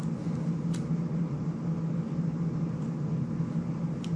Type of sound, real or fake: real